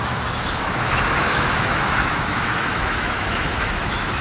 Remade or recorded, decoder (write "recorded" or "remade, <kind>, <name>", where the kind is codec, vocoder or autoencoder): remade, autoencoder, DAC-VAE